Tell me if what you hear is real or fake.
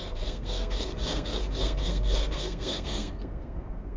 fake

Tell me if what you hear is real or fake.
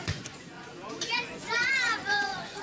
fake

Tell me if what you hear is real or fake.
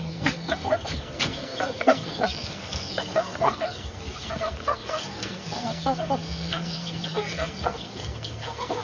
fake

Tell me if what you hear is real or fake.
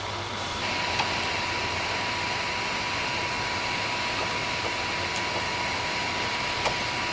real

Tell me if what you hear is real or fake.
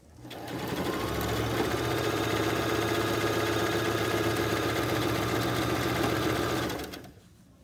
real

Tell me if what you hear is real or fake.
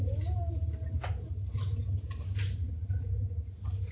real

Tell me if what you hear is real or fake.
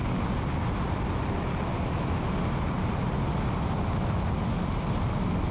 real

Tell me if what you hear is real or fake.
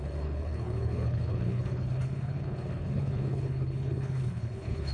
fake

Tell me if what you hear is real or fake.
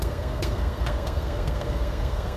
fake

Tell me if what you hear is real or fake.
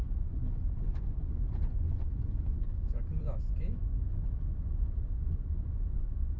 fake